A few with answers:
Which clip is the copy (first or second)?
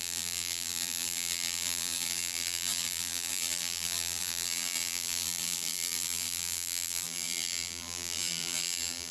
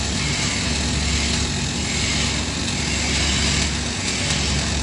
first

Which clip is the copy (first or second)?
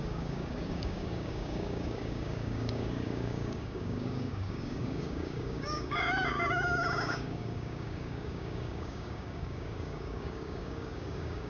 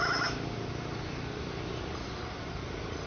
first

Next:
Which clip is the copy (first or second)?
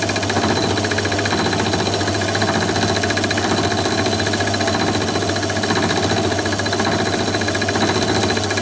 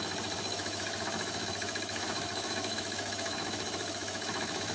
second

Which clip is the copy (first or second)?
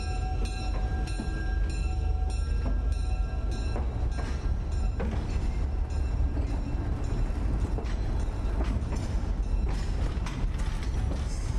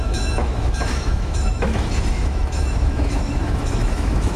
second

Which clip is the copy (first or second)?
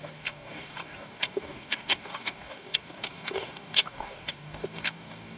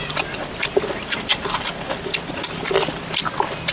first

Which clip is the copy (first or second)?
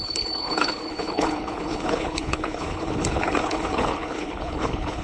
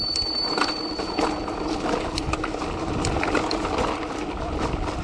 first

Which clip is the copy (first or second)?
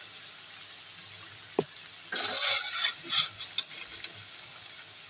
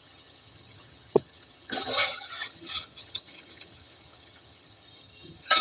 second